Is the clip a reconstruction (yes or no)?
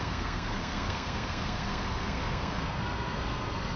yes